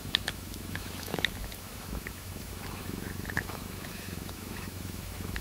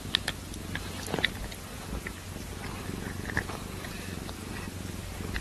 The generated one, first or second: first